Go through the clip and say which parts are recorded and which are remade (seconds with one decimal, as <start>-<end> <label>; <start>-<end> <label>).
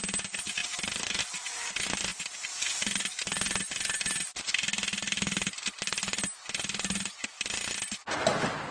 0.0-8.7 recorded